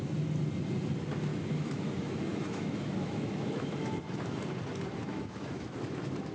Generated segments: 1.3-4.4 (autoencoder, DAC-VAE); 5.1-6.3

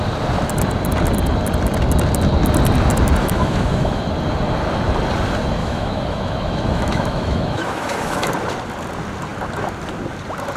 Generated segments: 3.2-4.0 (autoencoder, DAC-VAE); 5.6-8.3

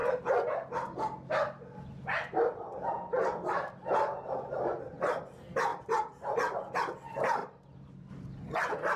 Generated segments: none

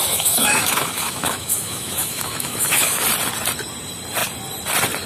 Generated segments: 0.0-3.0 (autoencoder, DAC-VAE)

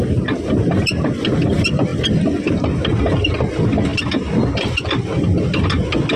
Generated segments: none

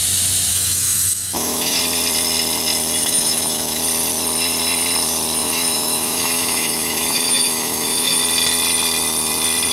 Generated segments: 0.5-1.8 (autoencoder, DAC-VAE); 3.0-3.8; 5.4-8.2